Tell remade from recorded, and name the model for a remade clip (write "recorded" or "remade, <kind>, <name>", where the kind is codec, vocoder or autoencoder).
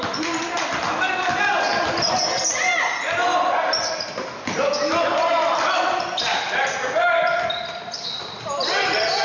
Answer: remade, vocoder, BigVGAN v2